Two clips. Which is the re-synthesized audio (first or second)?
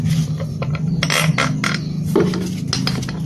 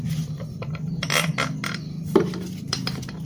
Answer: second